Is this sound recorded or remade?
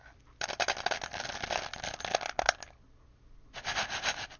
recorded